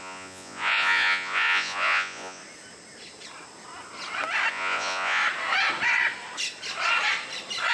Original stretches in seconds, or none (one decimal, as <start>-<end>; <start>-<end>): 2.4-4.5; 5.2-7.7